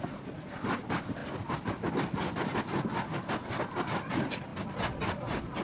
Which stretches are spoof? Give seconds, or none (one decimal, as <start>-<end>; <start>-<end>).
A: none

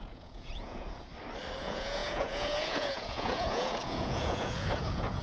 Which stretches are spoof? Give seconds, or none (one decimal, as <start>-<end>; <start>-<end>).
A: 0.0-1.1; 1.6-5.2